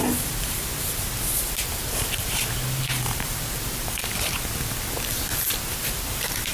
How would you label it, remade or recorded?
recorded